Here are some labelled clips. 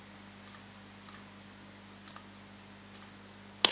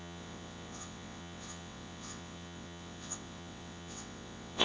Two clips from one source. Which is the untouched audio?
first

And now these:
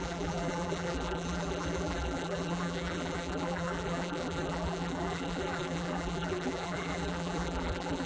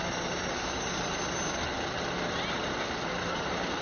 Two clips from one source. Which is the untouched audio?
second